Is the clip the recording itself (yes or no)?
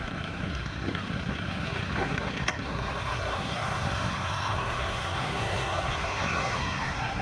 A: no